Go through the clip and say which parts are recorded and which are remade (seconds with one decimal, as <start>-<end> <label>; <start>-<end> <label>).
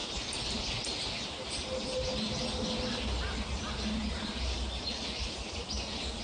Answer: 0.0-2.1 remade; 2.1-4.0 recorded; 4.0-4.8 remade; 4.8-6.2 recorded